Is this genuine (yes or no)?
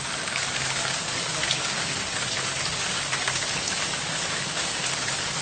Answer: no